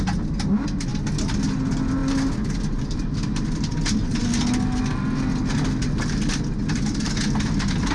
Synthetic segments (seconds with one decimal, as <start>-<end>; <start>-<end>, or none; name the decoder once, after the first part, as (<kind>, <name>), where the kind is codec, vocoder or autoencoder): none